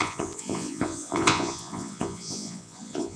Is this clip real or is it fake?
fake